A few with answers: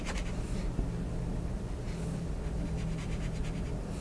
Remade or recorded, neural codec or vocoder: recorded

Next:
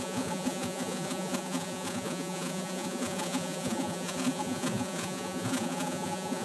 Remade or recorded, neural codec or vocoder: remade, vocoder, Vocos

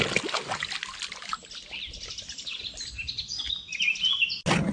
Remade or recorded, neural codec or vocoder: recorded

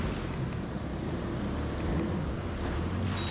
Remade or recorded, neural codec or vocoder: recorded